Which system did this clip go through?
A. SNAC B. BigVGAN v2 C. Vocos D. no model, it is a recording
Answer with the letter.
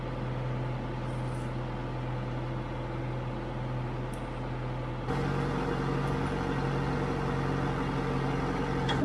D